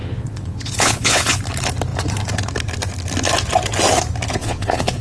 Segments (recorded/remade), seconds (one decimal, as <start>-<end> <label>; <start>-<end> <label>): 0.0-1.4 remade; 1.4-4.4 recorded; 4.4-5.0 remade